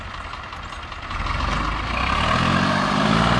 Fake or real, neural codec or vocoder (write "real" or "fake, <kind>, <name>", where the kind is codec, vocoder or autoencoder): real